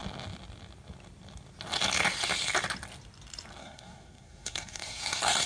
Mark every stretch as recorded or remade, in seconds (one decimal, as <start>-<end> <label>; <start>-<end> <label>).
0.0-3.6 recorded; 3.6-5.5 remade

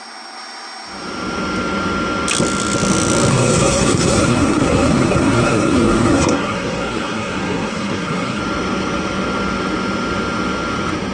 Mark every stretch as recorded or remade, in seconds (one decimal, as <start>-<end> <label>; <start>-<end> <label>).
0.0-3.3 recorded; 3.3-8.4 remade; 8.4-11.1 recorded

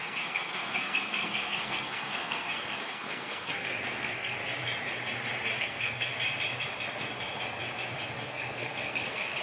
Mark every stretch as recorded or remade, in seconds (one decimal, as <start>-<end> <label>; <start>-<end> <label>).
0.0-4.4 remade; 4.4-5.6 recorded; 5.6-6.1 remade; 6.1-8.3 recorded; 8.3-9.4 remade

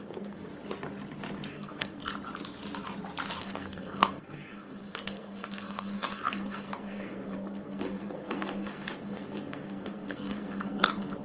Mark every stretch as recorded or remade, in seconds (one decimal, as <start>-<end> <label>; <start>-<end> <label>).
0.0-0.5 remade; 0.5-1.5 recorded; 1.5-2.1 remade; 2.1-3.4 recorded; 3.4-11.2 remade

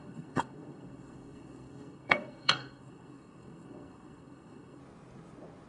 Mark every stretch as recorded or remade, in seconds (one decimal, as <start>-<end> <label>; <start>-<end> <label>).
0.0-4.8 remade; 4.8-5.7 recorded

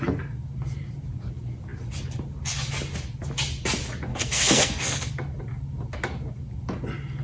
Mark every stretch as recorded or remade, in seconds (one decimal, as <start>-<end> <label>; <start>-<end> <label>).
0.0-4.1 recorded; 4.1-5.1 remade; 5.1-7.2 recorded

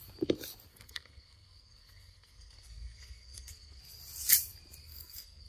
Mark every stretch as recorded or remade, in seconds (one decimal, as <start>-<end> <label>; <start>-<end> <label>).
0.0-0.7 recorded; 0.7-3.8 remade; 3.8-4.8 recorded; 4.8-5.5 remade